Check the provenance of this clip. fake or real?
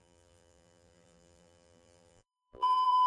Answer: fake